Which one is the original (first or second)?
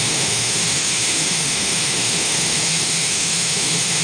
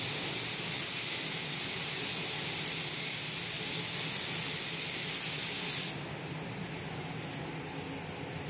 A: second